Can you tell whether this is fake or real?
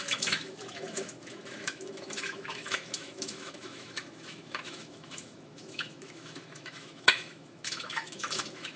fake